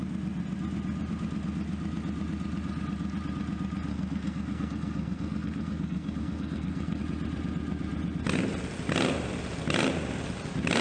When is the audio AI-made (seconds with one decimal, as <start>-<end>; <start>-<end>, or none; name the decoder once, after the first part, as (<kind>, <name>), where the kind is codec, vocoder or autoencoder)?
3.9-7.0 (codec, SNAC)